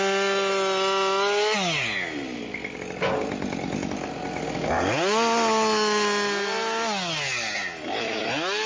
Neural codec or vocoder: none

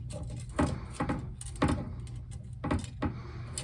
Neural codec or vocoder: none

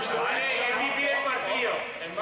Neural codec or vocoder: none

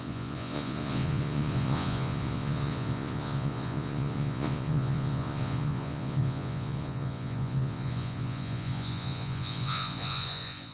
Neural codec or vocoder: vocoder, Vocos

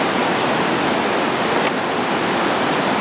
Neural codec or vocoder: none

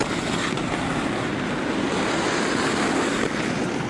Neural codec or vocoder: none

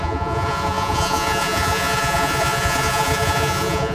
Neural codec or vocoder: vocoder, Vocos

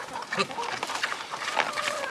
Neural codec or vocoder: none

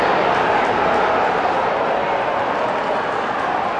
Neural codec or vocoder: none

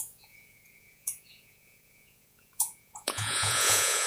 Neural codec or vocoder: vocoder, Vocos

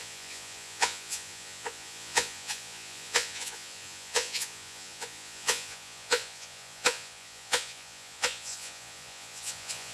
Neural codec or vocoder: vocoder, Vocos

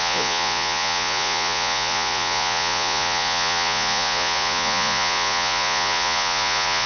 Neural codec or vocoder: vocoder, Vocos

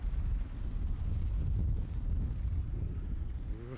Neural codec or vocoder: none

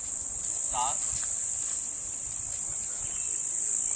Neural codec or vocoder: none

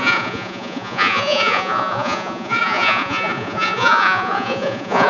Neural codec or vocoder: vocoder, Vocos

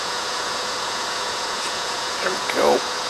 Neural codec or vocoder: vocoder, Vocos